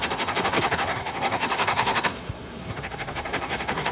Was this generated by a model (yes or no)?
yes